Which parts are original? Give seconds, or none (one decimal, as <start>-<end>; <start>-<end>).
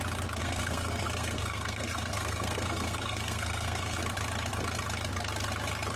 0.0-0.4; 4.0-6.0